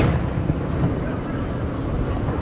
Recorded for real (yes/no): yes